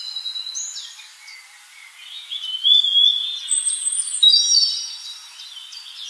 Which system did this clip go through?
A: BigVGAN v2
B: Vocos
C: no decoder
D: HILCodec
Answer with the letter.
C